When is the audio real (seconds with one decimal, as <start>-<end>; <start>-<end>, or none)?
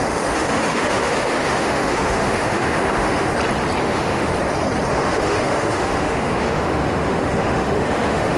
3.3-3.8; 4.3-4.9